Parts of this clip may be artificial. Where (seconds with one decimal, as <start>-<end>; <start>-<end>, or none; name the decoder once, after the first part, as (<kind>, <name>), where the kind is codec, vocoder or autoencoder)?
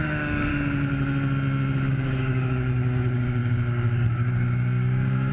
0.0-0.5 (codec, DAC); 1.9-5.3